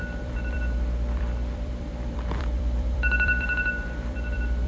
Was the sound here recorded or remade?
remade